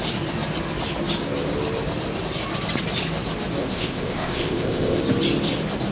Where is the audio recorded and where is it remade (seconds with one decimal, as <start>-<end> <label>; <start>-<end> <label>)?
0.0-3.6 recorded; 3.6-5.0 remade; 5.0-5.9 recorded